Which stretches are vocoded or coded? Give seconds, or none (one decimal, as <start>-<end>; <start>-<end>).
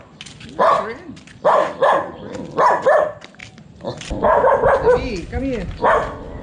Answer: none